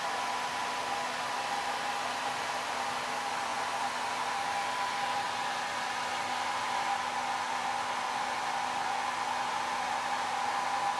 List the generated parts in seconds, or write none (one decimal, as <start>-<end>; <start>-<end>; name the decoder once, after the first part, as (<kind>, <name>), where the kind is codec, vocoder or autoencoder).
none